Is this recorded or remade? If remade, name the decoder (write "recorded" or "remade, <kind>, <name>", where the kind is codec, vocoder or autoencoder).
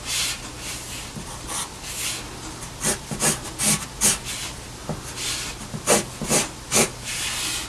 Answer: recorded